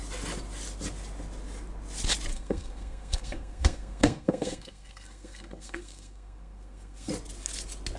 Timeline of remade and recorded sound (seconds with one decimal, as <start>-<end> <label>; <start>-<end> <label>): 0.0-2.3 recorded; 2.3-7.1 remade; 7.1-8.0 recorded